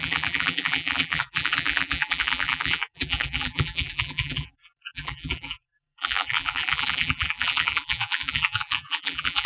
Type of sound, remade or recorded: remade